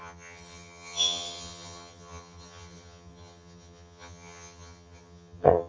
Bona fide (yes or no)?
no